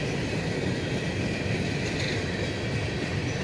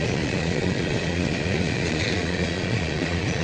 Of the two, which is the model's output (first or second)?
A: second